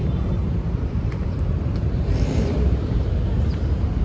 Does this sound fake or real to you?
fake